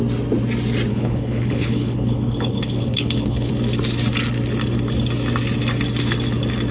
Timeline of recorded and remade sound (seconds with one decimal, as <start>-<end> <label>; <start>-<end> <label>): 0.0-0.9 recorded; 0.9-3.5 remade; 3.5-6.7 recorded